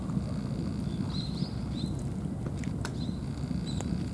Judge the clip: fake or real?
real